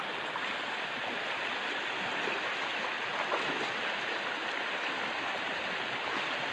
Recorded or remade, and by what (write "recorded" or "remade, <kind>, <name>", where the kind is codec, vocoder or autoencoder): recorded